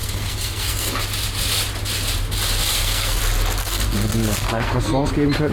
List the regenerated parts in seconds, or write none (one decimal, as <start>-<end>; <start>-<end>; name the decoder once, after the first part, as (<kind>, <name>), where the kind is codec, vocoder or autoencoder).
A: 0.0-1.0 (codec, SNAC); 2.7-3.2; 3.6-5.1